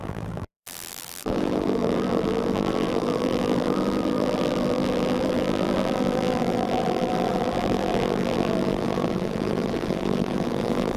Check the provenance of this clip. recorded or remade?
remade